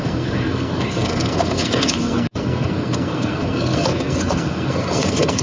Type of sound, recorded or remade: remade